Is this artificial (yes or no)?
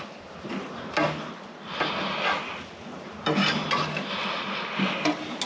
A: no